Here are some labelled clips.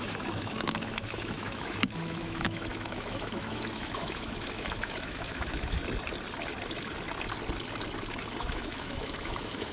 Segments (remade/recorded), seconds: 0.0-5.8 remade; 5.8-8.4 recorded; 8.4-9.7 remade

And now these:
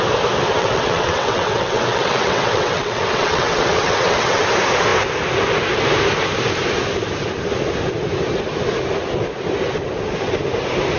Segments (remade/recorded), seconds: 0.0-0.5 recorded; 0.5-4.4 remade; 4.4-11.0 recorded